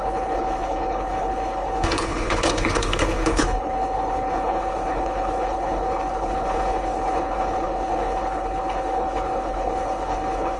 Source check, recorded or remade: remade